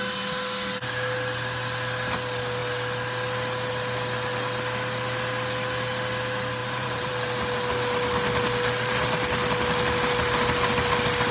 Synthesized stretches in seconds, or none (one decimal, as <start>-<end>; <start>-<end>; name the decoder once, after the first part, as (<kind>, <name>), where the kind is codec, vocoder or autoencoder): 6.6-7.1 (vocoder, BigVGAN v2)